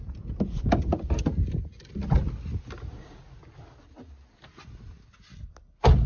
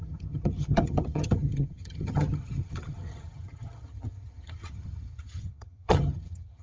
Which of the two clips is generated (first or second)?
second